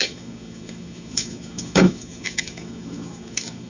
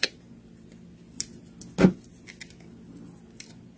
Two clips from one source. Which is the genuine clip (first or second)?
second